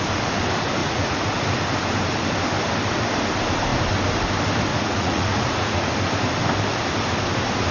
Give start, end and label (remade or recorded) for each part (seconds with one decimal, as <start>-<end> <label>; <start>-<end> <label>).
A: 0.0-0.8 recorded; 0.8-1.4 remade; 1.4-4.7 recorded; 4.7-5.9 remade; 5.9-7.7 recorded